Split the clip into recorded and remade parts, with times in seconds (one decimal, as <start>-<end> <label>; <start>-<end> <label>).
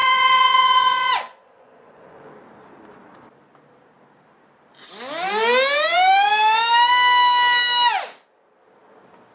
0.0-2.3 remade; 2.3-9.3 recorded